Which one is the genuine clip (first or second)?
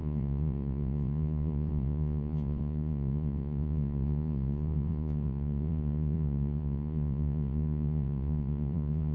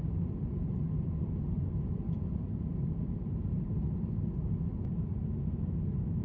second